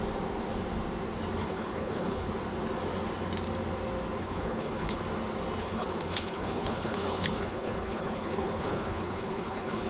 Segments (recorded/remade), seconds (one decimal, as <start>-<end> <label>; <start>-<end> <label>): 0.0-1.4 recorded; 1.4-2.3 remade; 2.3-4.2 recorded; 4.2-5.0 remade; 5.0-5.6 recorded; 5.6-9.9 remade